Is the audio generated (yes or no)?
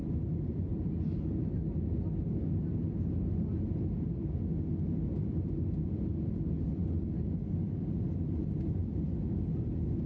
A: no